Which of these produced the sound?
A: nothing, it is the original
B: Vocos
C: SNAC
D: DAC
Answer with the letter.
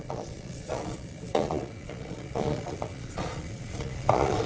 B